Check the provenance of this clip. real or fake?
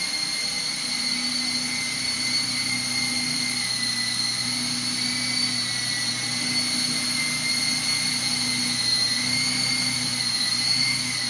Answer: real